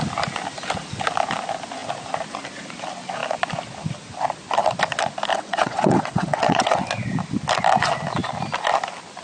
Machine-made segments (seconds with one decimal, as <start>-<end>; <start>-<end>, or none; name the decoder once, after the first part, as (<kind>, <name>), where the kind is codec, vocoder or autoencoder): 5.3-6.8 (vocoder, WaveNeXt)